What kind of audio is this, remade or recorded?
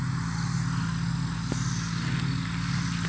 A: recorded